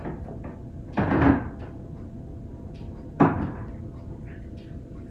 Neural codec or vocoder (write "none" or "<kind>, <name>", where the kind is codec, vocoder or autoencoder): none